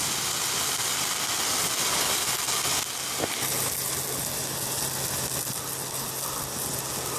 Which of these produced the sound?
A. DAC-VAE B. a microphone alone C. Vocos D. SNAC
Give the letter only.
B